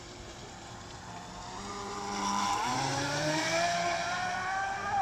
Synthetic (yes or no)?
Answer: yes